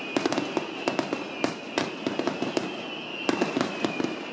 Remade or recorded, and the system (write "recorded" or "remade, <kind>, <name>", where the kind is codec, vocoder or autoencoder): recorded